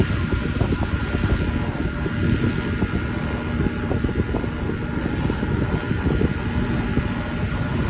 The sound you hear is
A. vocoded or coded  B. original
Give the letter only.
B